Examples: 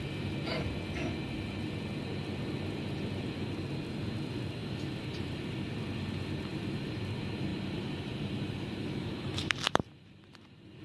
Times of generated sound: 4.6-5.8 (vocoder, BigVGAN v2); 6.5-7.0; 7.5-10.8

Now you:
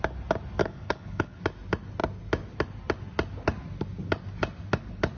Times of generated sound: 0.6-1.4 (codec, HILCodec)

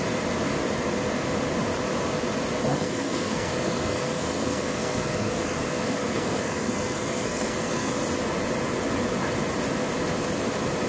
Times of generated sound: 2.7-7.9 (codec, SNAC)

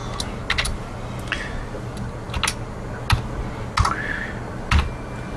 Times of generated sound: none

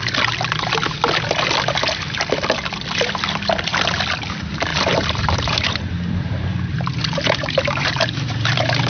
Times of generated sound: 4.7-8.9 (vocoder, BigVGAN v2)

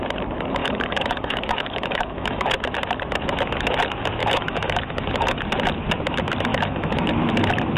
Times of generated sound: 0.6-2.5 (autoencoder, DAC-VAE); 4.2-5.4; 6.5-7.1